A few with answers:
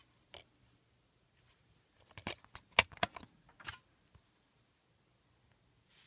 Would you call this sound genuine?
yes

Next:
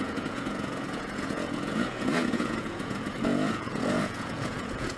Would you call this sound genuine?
no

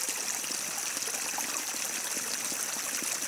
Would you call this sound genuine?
yes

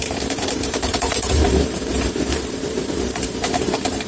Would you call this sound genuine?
no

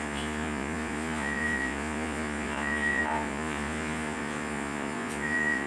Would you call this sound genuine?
no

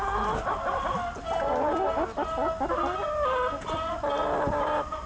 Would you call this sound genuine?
yes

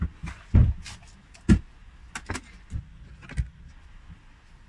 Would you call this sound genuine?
yes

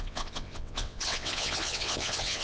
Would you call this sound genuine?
no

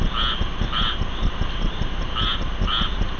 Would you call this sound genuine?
yes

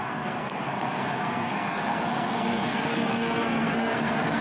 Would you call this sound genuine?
no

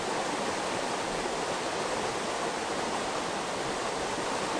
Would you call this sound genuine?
yes